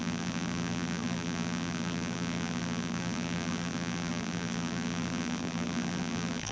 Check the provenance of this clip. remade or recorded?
remade